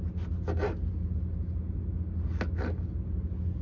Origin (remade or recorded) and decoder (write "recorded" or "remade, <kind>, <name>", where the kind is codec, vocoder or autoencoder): recorded